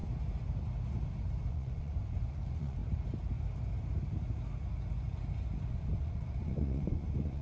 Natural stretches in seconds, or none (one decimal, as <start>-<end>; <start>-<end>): 0.0-1.5; 2.8-5.7